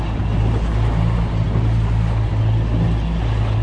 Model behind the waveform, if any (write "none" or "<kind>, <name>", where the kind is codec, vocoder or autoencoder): none